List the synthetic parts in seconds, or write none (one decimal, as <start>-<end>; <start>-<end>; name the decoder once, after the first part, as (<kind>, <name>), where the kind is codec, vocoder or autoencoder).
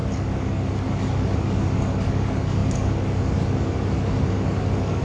0.0-5.0 (codec, DAC)